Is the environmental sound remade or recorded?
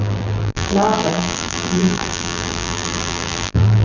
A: remade